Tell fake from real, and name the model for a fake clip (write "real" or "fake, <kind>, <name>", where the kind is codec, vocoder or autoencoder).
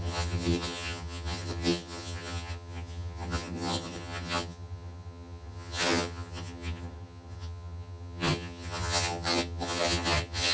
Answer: fake, vocoder, HiFi-GAN